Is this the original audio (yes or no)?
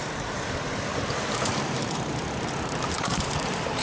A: no